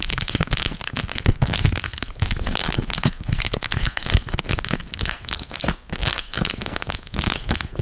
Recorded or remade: remade